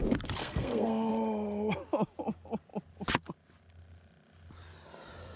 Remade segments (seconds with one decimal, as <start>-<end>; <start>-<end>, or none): 0.4-1.1